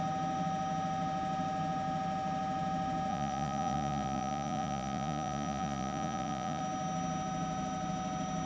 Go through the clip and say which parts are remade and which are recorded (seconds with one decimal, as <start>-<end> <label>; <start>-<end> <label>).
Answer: 0.0-3.1 recorded; 3.1-6.6 remade; 6.6-8.4 recorded